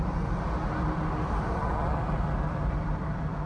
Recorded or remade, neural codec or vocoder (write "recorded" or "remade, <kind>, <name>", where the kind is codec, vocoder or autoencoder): recorded